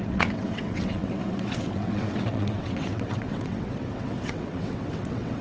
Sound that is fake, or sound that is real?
fake